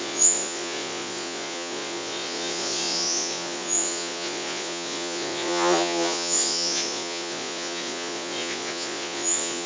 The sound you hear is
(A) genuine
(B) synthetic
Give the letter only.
B